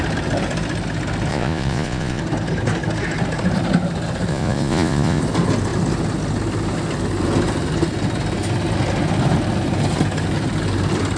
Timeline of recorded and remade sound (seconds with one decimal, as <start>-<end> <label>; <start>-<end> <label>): 0.0-1.3 recorded; 1.3-2.2 remade; 2.2-4.3 recorded; 4.3-5.2 remade; 5.2-11.2 recorded